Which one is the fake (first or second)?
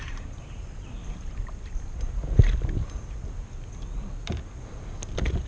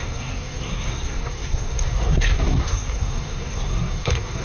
second